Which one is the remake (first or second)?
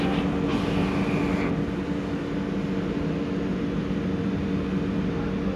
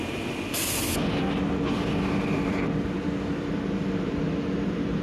second